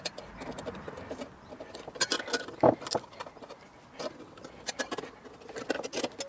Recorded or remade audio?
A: recorded